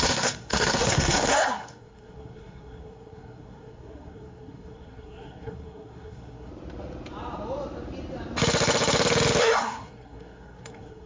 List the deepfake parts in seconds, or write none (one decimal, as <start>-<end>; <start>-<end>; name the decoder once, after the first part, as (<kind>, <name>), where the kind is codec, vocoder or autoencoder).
0.0-6.5 (codec, SNAC); 9.4-11.1